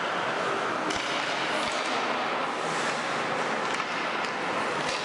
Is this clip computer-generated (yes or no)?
no